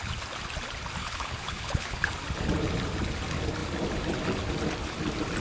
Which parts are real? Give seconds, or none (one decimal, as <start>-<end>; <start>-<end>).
0.0-1.0; 2.1-5.4